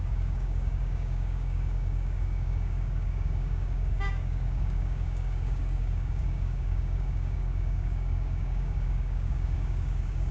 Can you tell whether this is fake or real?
fake